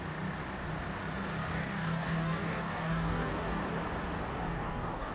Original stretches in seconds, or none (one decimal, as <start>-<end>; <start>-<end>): 0.0-1.5; 3.6-4.3